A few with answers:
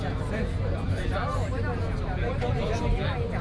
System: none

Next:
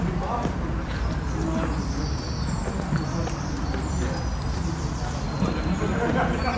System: none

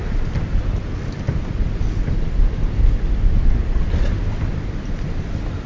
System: none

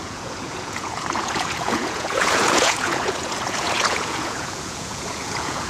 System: vocoder, Vocos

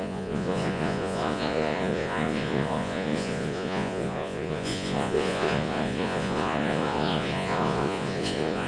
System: vocoder, Vocos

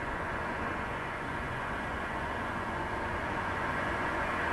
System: vocoder, Vocos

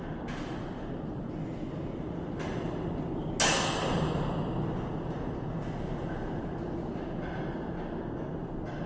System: none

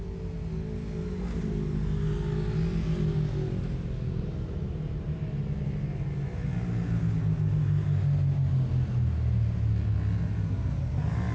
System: none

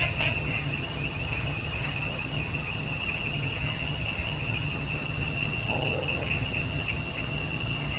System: vocoder, HiFi-GAN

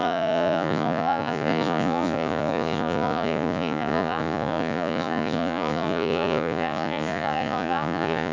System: vocoder, Vocos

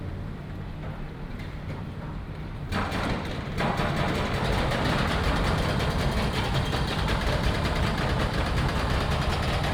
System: vocoder, BigVGAN v2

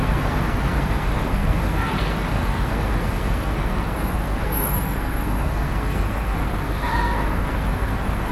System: codec, SNAC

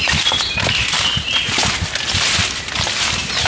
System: none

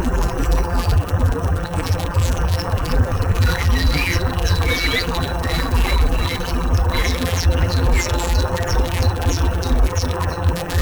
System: vocoder, BigVGAN v2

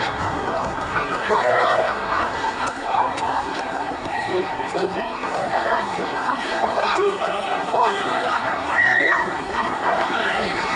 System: codec, SNAC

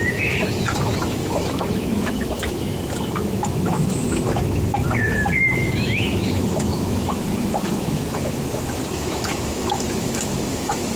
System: autoencoder, DAC-VAE